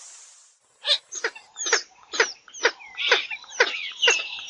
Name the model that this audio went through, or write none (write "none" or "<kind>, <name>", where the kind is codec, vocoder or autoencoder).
vocoder, BigVGAN v2